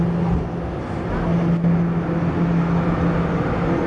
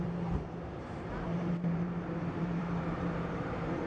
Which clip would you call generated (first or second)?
second